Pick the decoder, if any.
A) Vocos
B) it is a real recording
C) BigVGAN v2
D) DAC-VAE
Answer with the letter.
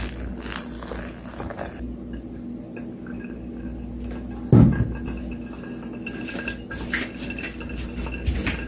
B